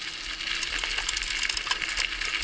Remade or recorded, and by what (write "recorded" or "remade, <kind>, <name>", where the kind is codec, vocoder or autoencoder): recorded